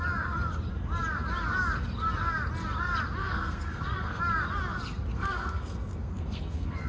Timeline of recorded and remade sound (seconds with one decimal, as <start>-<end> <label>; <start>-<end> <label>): 0.0-3.2 recorded; 3.2-4.2 remade; 4.2-5.1 recorded; 5.1-6.9 remade